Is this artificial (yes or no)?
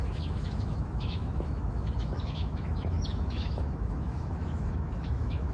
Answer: yes